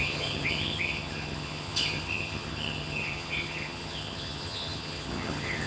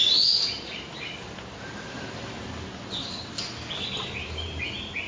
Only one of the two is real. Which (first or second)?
second